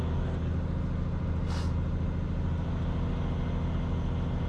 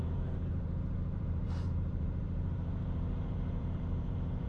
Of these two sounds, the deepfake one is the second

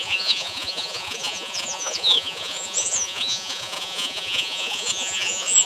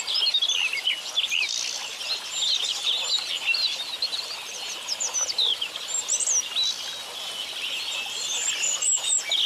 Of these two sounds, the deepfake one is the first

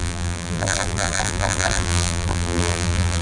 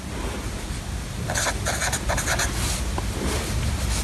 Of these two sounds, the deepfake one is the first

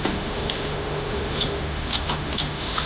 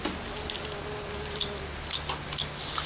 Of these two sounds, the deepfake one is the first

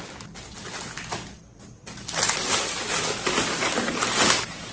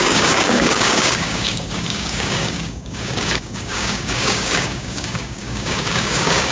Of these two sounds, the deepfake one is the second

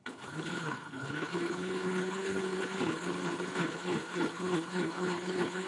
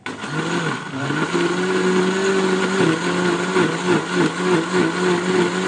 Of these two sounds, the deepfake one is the first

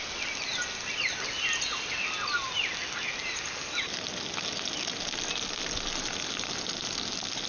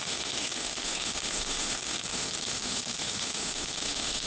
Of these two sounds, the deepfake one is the second